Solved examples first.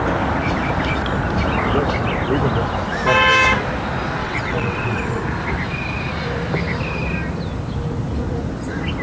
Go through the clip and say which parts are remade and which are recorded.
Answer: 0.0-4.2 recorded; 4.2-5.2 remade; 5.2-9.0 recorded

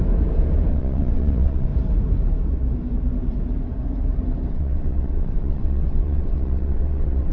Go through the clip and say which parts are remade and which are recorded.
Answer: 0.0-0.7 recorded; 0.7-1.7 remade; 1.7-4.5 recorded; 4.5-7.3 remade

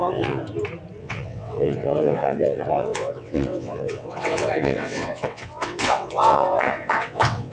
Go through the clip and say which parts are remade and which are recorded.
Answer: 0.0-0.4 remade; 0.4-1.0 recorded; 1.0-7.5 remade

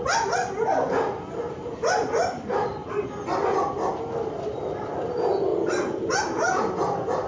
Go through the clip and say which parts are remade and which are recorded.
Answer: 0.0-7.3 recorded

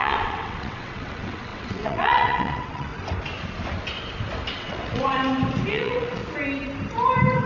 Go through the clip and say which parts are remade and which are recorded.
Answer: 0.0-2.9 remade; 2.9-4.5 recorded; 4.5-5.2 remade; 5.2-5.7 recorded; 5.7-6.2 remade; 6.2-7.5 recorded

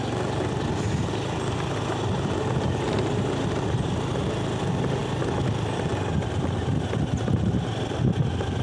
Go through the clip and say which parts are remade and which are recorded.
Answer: 0.0-8.6 recorded

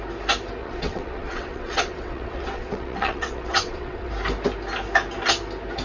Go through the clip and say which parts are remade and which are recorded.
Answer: 0.0-0.6 recorded; 0.6-4.1 remade; 4.1-5.8 recorded

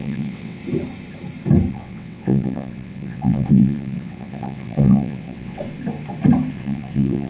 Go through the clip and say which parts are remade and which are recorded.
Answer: 0.0-0.6 remade; 0.6-1.7 recorded; 1.7-5.6 remade; 5.6-6.5 recorded; 6.5-7.3 remade